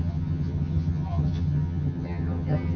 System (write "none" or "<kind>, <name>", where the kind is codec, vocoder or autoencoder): vocoder, HiFi-GAN